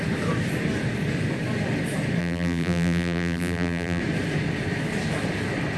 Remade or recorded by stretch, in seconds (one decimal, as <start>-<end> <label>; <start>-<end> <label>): 0.0-2.2 recorded; 2.2-4.0 remade; 4.0-5.8 recorded